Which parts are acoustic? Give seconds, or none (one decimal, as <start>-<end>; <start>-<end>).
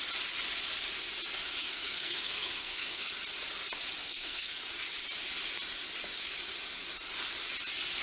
0.0-1.6; 3.1-4.0; 4.6-8.0